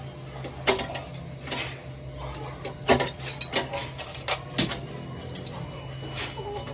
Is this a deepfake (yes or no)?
no